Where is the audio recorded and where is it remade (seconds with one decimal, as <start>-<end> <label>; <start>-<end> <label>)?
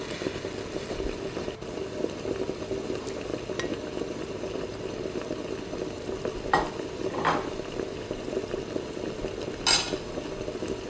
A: 0.0-10.9 recorded